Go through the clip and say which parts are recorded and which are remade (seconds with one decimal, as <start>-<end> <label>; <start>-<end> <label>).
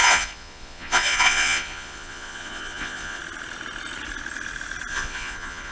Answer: 0.0-3.2 remade; 3.2-4.9 recorded; 4.9-5.7 remade